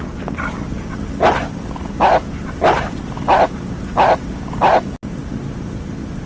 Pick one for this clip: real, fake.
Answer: real